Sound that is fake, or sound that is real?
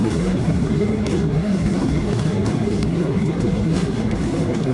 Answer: fake